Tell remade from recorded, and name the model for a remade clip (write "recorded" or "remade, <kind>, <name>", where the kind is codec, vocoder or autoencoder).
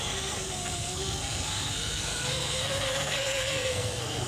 remade, codec, SNAC